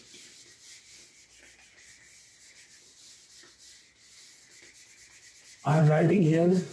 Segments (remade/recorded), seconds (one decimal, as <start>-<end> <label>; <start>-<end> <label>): 0.0-5.8 recorded; 5.8-6.7 remade